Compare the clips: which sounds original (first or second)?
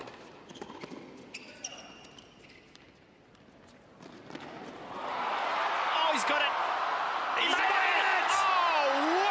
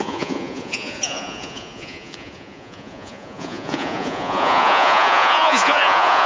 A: first